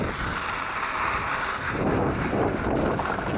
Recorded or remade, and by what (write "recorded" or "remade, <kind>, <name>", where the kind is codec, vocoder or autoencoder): recorded